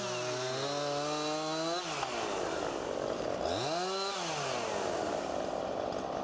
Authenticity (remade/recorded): recorded